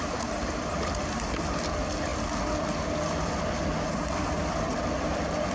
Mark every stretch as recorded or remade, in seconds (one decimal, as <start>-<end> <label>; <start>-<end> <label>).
0.0-5.5 recorded